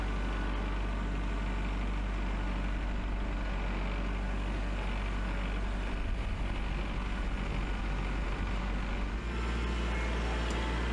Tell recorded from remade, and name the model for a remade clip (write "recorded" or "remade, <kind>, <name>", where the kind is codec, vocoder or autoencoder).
recorded